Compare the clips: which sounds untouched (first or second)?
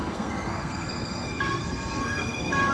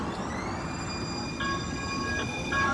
second